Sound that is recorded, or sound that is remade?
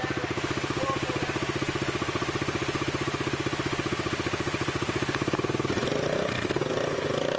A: recorded